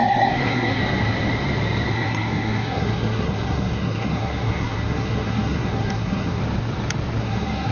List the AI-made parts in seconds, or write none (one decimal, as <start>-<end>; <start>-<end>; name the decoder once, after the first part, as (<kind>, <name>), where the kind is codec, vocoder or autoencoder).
0.0-0.8 (codec, SNAC); 1.9-6.4; 7.2-7.7